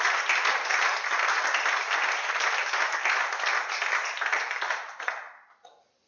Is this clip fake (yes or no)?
no